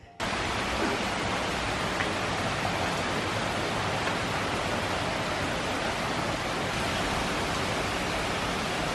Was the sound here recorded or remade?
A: recorded